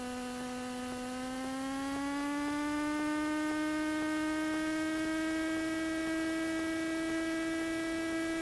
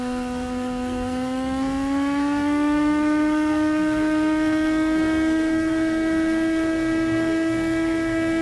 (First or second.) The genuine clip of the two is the first